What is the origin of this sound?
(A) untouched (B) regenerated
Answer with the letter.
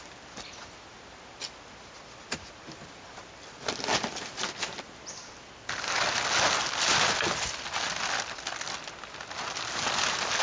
A